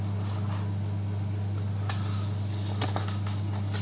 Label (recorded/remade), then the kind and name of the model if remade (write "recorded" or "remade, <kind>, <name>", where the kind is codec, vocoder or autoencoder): recorded